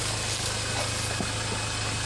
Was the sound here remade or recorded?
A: recorded